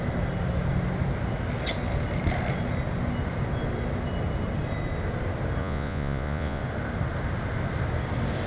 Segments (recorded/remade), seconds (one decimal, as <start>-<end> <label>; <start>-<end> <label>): 0.0-5.6 recorded; 5.6-6.6 remade; 6.6-8.5 recorded